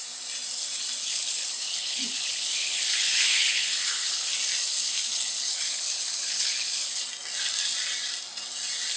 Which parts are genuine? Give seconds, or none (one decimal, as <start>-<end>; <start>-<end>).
0.0-1.0; 4.3-4.7; 7.0-9.0